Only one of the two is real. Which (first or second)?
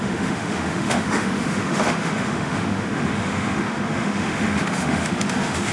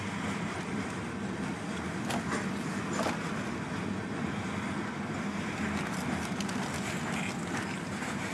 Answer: second